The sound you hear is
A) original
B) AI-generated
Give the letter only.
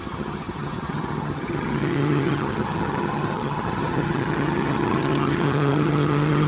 B